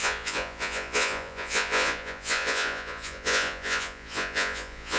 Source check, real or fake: fake